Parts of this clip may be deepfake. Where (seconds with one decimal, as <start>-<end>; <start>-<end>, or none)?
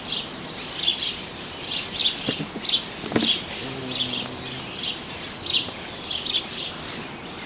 none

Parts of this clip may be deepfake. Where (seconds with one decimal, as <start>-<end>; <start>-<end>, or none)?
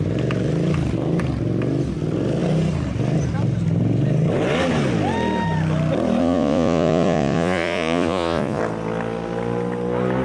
6.2-8.6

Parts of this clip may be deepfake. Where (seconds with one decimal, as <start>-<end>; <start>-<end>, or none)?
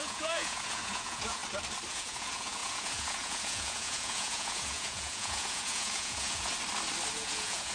0.0-1.4; 1.9-6.5; 7.1-7.7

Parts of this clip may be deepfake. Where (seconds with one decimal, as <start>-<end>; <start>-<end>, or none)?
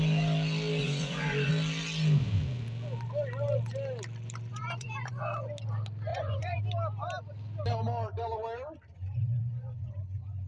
0.8-1.5; 4.5-5.3; 6.1-6.6; 8.9-10.5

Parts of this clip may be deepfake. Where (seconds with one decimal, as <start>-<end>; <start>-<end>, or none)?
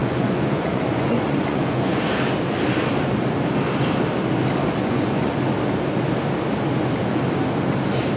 0.0-2.0; 4.8-5.4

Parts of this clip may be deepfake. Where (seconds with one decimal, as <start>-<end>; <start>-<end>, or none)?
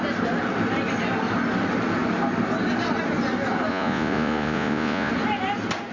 3.7-5.1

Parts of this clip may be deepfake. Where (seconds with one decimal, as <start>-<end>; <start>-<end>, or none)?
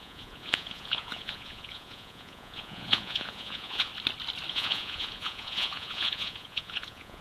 0.0-3.9; 4.5-7.2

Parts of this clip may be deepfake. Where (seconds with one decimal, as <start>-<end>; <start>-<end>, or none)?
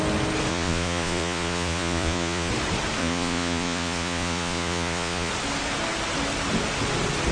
0.5-2.5; 3.0-5.3